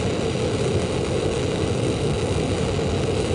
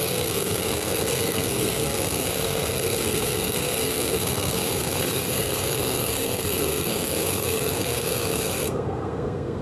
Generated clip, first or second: second